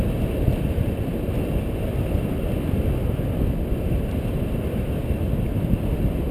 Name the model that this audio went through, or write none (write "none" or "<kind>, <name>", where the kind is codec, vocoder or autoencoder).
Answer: none